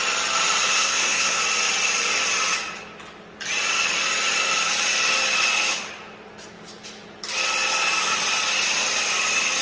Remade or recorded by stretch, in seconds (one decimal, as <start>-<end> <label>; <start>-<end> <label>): 0.0-0.6 recorded; 0.6-1.4 remade; 1.4-9.6 recorded